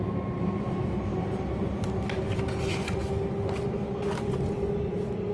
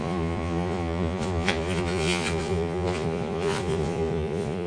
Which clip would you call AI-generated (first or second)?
second